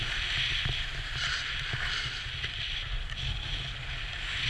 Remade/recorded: recorded